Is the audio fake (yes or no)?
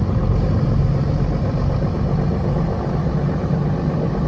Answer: no